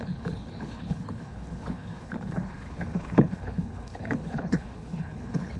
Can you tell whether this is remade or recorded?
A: remade